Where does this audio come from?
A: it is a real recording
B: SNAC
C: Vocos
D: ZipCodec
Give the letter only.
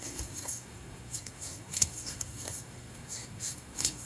B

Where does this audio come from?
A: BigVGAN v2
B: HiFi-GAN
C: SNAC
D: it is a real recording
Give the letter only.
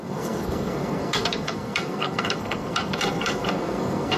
C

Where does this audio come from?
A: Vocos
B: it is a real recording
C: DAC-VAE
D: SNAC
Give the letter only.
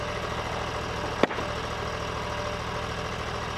B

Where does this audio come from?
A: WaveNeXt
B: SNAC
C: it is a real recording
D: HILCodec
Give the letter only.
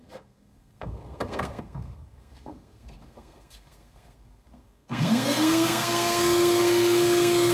B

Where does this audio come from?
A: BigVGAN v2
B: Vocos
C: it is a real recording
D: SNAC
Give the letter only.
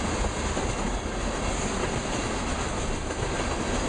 C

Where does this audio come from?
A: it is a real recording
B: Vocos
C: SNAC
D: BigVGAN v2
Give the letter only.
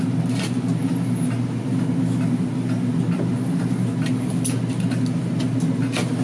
A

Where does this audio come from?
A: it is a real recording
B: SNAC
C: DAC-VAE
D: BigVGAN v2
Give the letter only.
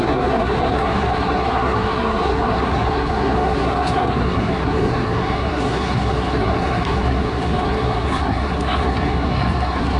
B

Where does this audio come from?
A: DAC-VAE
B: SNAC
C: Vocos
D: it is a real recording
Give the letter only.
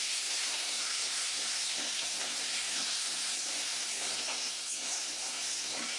B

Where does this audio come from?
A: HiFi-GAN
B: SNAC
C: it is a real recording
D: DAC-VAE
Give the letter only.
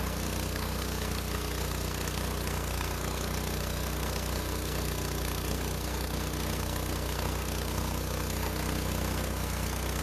B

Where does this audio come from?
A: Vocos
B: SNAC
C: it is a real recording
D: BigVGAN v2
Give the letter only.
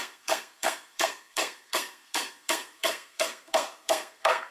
B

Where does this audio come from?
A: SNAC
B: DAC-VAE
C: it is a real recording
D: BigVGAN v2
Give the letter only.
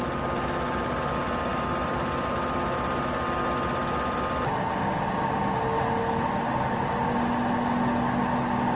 C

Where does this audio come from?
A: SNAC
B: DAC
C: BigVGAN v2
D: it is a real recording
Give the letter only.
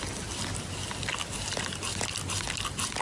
D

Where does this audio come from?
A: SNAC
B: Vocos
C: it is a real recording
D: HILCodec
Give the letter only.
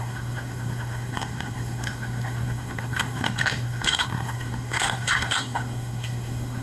A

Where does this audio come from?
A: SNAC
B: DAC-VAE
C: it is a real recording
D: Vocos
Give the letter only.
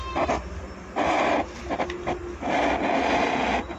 C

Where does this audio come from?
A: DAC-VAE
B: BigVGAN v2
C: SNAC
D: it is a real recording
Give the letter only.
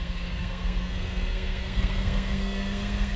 C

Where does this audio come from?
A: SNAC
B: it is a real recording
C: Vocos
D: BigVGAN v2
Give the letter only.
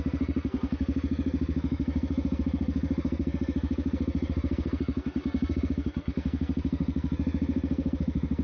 A